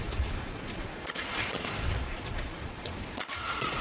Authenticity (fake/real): fake